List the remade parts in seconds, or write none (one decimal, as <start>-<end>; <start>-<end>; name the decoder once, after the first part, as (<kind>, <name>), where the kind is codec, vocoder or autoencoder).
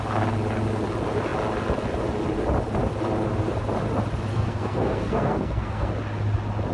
4.3-5.9 (codec, SNAC)